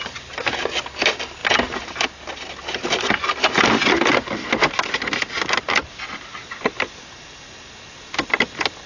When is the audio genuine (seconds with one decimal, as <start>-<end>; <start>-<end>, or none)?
0.0-8.9